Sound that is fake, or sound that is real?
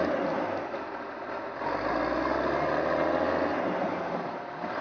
real